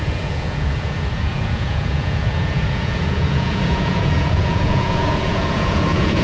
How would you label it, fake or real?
fake